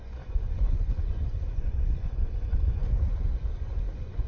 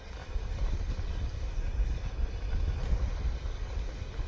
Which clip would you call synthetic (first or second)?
first